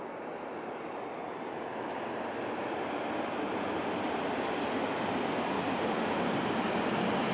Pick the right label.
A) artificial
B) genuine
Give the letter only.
B